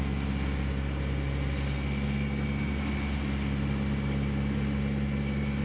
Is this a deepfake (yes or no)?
no